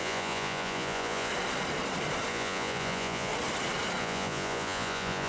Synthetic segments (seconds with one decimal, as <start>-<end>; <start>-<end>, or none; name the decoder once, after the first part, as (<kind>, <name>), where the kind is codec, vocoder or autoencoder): 0.0-1.3 (vocoder, Vocos); 2.3-3.3; 4.0-5.3